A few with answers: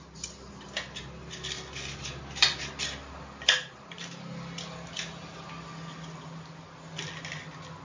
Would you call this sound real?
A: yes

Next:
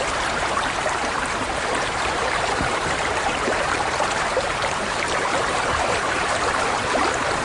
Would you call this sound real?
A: no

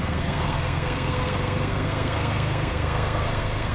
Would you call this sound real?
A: no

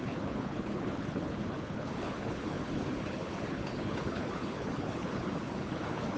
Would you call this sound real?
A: no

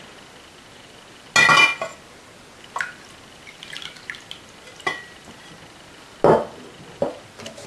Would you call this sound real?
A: yes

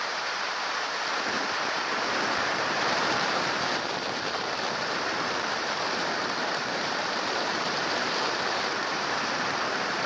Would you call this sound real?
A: no